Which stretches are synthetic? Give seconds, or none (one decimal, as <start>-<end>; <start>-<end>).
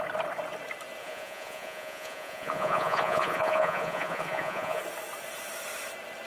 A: 1.0-4.8